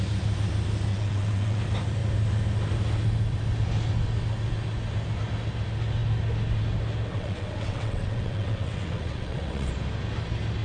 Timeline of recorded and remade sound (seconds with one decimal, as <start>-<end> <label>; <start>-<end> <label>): 0.0-0.9 recorded; 0.9-1.6 remade; 1.6-7.1 recorded; 7.1-9.7 remade; 9.7-10.6 recorded